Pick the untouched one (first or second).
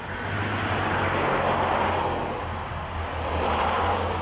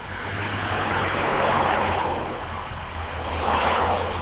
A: first